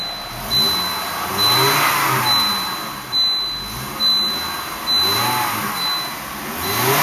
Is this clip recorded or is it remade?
recorded